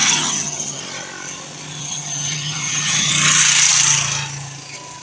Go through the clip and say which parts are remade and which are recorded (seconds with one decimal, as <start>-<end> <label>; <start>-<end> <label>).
0.0-0.8 remade; 0.8-1.8 recorded; 1.8-3.1 remade; 3.1-5.0 recorded